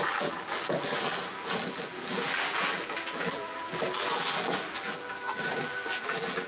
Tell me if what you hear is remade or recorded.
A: remade